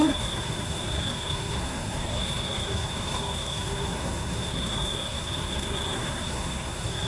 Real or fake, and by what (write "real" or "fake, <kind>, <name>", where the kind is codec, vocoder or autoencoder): fake, codec, SNAC